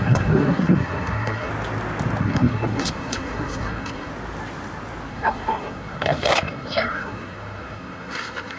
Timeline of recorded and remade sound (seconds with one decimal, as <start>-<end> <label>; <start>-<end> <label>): 0.0-1.5 remade; 1.5-2.2 recorded; 2.2-4.1 remade; 4.1-5.1 recorded; 5.1-8.6 remade